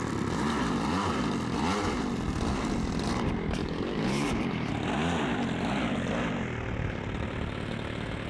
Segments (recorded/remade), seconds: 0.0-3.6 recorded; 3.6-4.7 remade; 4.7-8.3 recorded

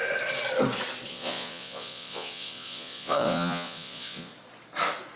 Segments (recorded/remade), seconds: 0.0-1.1 recorded; 1.1-4.3 remade; 4.3-5.2 recorded

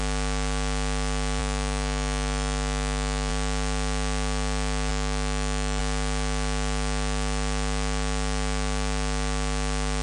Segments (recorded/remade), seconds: 0.0-1.4 recorded; 1.4-3.3 remade; 3.3-4.9 recorded; 4.9-5.8 remade; 5.8-10.0 recorded

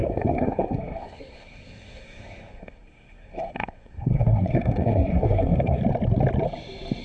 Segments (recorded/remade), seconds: 0.0-5.8 remade; 5.8-7.0 recorded